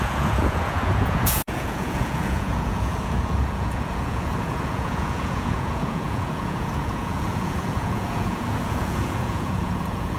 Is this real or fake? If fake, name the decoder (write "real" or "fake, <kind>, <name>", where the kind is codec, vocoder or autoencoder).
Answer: fake, vocoder, Vocos